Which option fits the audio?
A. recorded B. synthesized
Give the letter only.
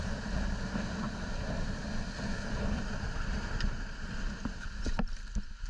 B